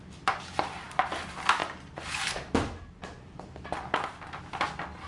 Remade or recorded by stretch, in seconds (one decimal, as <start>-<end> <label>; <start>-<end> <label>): 0.0-5.1 recorded